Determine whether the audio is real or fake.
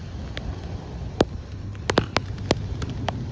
real